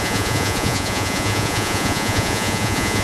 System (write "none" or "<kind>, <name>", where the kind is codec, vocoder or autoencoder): vocoder, Vocos